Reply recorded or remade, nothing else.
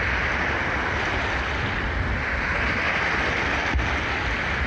recorded